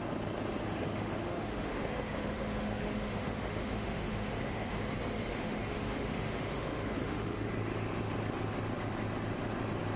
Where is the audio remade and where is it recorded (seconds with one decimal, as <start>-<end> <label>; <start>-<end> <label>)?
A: 0.0-0.6 recorded; 0.6-4.8 remade; 4.8-5.3 recorded; 5.3-7.5 remade; 7.5-10.0 recorded